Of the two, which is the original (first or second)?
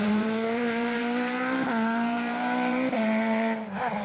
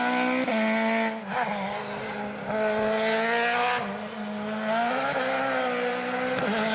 second